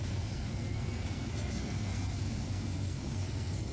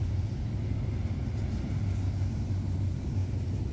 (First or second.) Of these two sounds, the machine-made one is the first